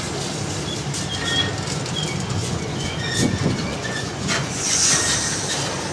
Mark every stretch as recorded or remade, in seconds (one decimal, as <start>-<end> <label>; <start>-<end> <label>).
0.0-2.4 recorded; 2.4-4.9 remade; 4.9-5.9 recorded